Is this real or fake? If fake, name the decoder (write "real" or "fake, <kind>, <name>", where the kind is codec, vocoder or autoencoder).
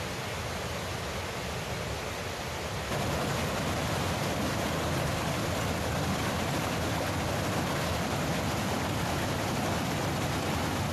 real